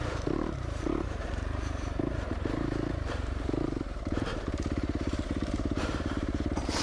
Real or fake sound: fake